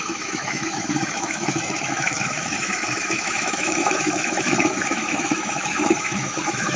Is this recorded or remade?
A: remade